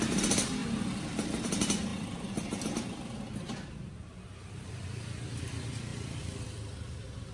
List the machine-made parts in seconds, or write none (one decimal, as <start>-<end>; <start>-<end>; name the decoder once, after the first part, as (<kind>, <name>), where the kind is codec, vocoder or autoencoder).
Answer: 0.6-1.5 (vocoder, BigVGAN v2); 1.9-4.7; 5.9-7.3